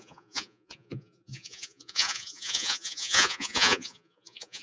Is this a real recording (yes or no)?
no